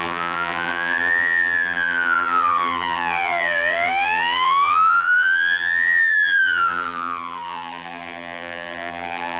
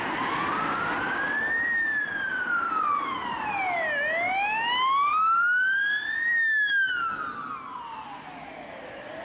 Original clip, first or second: second